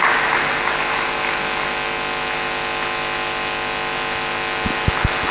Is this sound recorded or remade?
recorded